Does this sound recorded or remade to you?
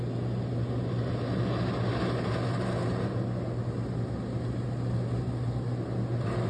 recorded